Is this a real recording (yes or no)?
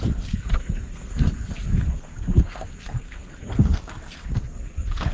no